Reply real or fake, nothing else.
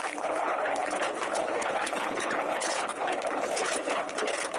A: fake